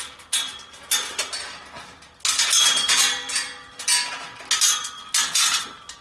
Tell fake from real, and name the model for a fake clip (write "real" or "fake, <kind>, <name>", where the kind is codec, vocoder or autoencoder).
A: real